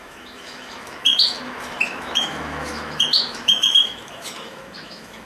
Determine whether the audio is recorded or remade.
remade